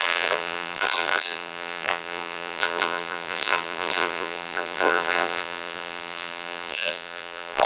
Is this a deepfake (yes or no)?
yes